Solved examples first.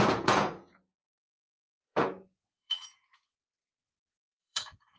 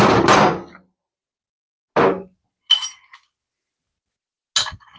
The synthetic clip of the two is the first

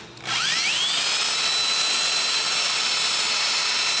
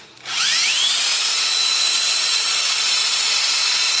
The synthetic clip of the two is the second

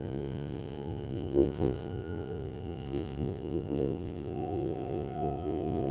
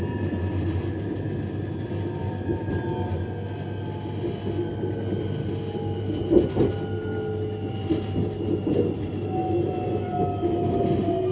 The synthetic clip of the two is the first